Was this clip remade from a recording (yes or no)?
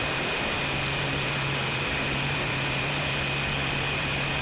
yes